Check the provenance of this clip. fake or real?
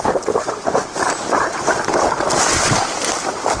fake